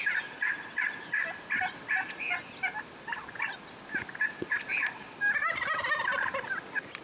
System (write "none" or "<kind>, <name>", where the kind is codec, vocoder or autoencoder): none